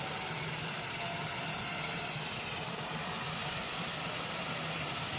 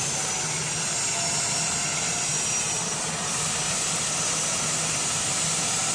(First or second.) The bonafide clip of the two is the second